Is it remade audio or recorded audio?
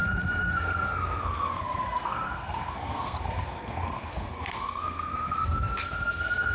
remade